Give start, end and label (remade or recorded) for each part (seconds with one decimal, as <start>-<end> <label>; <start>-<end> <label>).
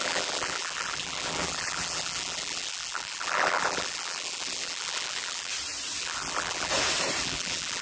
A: 0.0-5.5 remade; 5.5-6.0 recorded; 6.0-6.7 remade; 6.7-7.2 recorded; 7.2-7.8 remade